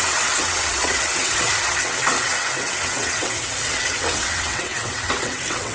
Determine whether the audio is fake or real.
fake